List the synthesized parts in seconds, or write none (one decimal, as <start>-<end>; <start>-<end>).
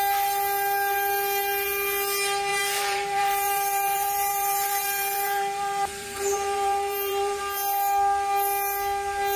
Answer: 2.5-7.4